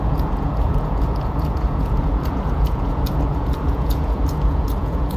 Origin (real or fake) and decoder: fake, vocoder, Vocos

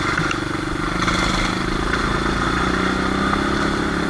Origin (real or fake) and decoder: real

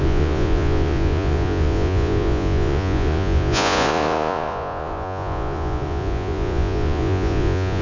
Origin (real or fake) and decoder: fake, vocoder, Vocos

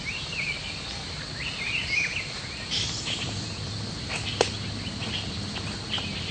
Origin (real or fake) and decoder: real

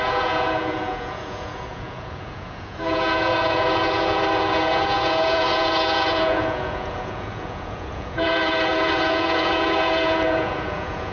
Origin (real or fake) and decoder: fake, vocoder, Vocos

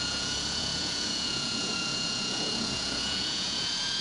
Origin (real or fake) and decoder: fake, vocoder, Vocos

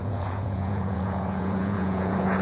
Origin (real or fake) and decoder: fake, vocoder, Vocos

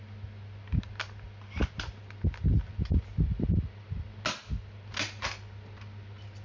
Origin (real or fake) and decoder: real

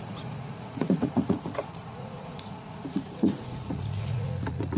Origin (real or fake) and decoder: fake, vocoder, Vocos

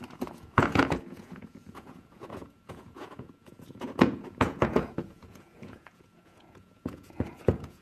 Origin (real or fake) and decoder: fake, vocoder, Vocos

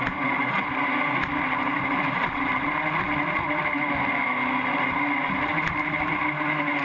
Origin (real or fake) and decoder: real